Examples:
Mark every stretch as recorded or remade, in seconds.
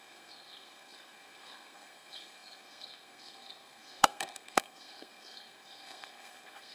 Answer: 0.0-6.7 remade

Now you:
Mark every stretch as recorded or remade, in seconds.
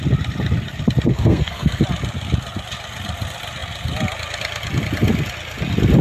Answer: 0.0-1.1 recorded; 1.1-1.8 remade; 1.8-6.0 recorded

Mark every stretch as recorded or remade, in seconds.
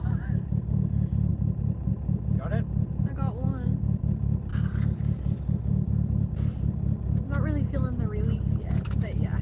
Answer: 0.0-9.4 recorded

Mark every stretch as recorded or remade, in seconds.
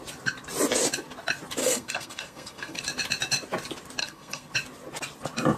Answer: 0.0-1.6 recorded; 1.6-2.8 remade; 2.8-4.0 recorded; 4.0-4.5 remade; 4.5-5.6 recorded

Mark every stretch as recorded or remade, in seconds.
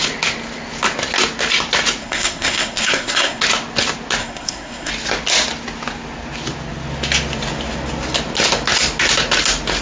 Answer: 0.0-2.0 recorded; 2.0-3.4 remade; 3.4-4.2 recorded; 4.2-4.9 remade; 4.9-9.8 recorded